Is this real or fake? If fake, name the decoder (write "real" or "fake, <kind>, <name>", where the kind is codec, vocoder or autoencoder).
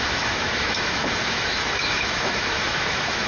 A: fake, autoencoder, DAC-VAE